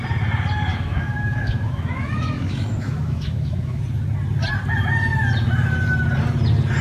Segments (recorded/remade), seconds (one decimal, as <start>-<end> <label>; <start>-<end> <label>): 0.0-0.7 recorded; 0.7-3.8 remade; 3.8-6.8 recorded